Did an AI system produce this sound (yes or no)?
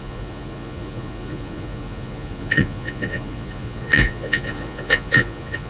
yes